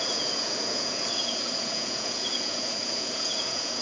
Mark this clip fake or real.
fake